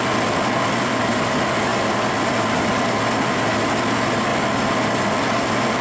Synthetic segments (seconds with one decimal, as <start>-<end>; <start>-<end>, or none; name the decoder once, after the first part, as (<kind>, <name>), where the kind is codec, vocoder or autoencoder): none